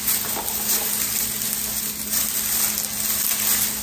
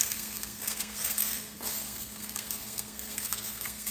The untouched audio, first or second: first